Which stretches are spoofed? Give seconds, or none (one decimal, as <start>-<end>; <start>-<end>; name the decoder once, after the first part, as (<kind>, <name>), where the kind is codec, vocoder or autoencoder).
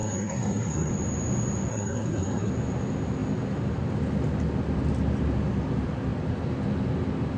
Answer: 0.0-0.9 (codec, SNAC); 1.7-2.5